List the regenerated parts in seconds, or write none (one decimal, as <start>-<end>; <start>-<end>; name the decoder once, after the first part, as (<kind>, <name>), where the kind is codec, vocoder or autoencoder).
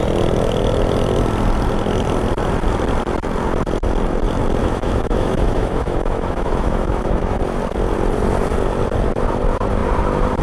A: 4.6-7.4 (autoencoder, DAC-VAE)